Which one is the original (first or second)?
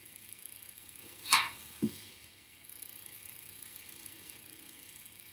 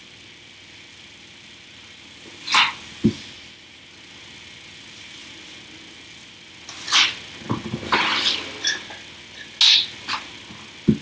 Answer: second